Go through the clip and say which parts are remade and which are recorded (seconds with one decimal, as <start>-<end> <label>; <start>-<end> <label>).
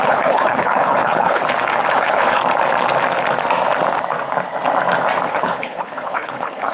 0.0-1.4 remade; 1.4-1.9 recorded; 1.9-2.4 remade; 2.4-5.3 recorded; 5.3-6.7 remade